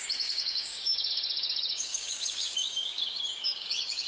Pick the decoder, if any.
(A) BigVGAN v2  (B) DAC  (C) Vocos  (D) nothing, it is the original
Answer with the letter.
B